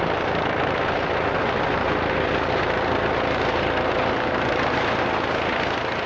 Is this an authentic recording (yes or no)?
yes